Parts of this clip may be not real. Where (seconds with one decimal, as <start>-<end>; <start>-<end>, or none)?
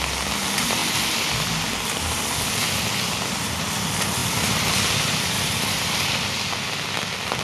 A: 0.8-1.5; 4.2-6.0